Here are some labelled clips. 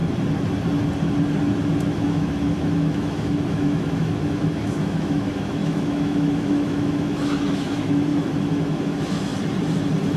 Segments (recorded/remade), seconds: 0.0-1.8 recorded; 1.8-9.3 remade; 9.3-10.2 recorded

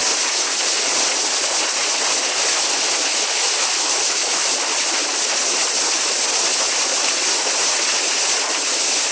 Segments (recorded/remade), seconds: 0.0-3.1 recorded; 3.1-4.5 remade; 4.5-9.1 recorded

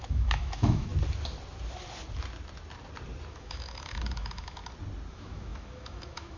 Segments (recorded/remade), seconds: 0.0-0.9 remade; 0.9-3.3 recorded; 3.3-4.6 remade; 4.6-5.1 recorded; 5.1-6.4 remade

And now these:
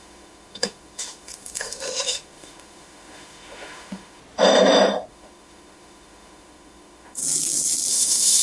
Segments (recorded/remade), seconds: 0.0-4.2 remade; 4.2-5.1 recorded; 5.1-7.2 remade; 7.2-7.9 recorded; 7.9-8.4 remade

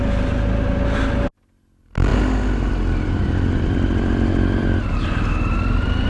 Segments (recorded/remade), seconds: 0.0-6.1 recorded